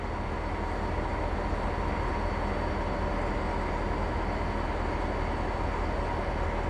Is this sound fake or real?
real